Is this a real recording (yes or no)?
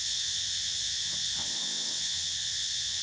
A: no